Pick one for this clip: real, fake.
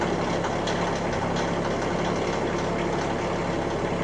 real